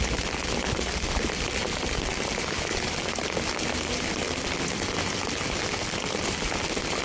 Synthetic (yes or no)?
no